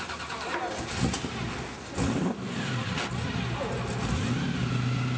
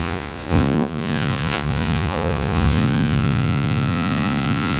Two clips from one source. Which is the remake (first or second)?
second